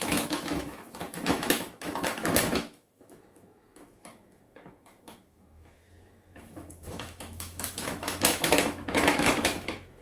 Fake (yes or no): yes